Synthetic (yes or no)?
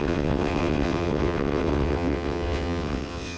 yes